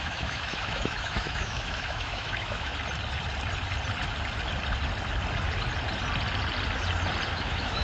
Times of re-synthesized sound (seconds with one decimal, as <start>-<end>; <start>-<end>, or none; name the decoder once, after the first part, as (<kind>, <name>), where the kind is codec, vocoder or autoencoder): 0.0-2.7 (autoencoder, DAC-VAE); 7.3-7.8